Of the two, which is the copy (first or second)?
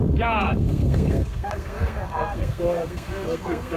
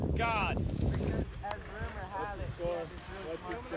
first